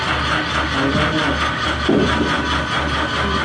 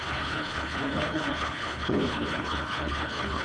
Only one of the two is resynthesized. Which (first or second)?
second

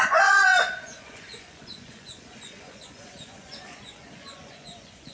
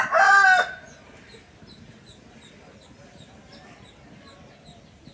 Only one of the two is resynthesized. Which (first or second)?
first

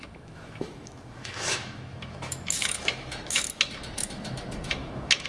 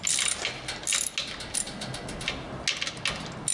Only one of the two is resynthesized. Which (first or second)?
first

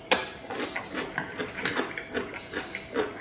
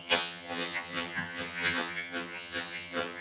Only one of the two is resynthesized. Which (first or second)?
second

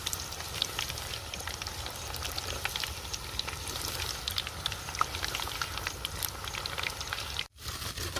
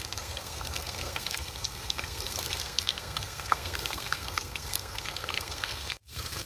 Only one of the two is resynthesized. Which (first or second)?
second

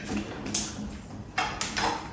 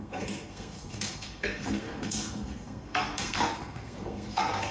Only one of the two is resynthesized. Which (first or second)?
second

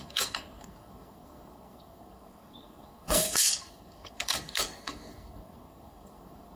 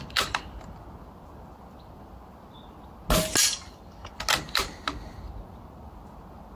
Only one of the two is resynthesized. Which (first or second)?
first